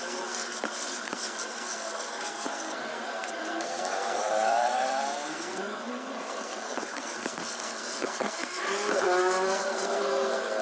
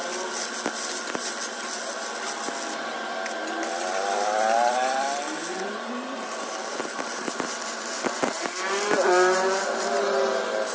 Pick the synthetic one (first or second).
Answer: first